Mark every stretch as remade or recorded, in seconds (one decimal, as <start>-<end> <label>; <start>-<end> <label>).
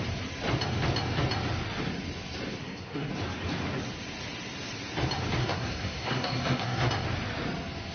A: 0.0-2.6 recorded; 2.6-3.1 remade; 3.1-5.4 recorded; 5.4-6.9 remade; 6.9-7.9 recorded